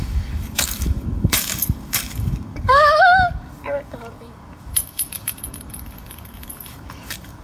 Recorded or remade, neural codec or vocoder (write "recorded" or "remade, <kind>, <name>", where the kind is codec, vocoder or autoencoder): remade, codec, DAC